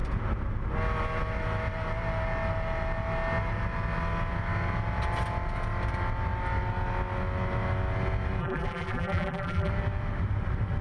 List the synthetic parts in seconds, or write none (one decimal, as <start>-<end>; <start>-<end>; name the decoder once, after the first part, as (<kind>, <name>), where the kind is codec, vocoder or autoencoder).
8.4-9.7 (vocoder, BigVGAN v2)